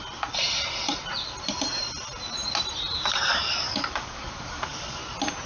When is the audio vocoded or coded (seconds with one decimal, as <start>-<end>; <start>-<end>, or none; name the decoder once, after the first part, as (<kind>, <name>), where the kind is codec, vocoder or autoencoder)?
3.3-5.0 (codec, DAC)